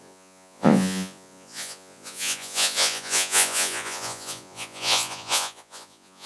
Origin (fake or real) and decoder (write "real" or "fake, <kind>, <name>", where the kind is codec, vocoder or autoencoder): fake, vocoder, Vocos